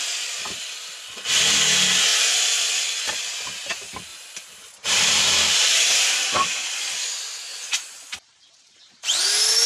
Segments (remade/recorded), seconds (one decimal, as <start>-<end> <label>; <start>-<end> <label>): 0.0-2.1 recorded; 2.1-2.8 remade; 2.8-4.1 recorded; 4.1-6.6 remade; 6.6-7.5 recorded; 7.5-9.7 remade